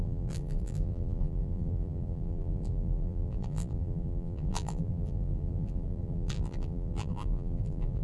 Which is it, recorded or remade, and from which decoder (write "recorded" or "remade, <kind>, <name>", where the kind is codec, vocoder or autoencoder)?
remade, vocoder, BigVGAN v2